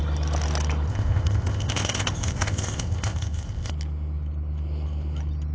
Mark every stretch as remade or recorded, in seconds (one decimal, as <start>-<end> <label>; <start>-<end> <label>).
0.0-0.9 recorded; 0.9-3.7 remade; 3.7-5.5 recorded